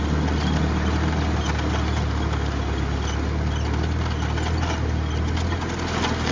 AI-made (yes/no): no